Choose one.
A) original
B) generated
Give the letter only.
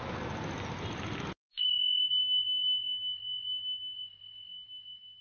A